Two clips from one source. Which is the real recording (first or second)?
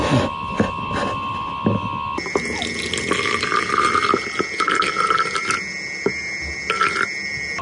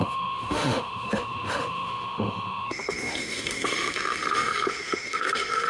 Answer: first